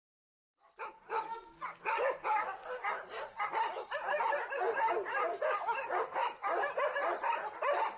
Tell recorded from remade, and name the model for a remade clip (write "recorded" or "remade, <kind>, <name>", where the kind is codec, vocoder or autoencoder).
recorded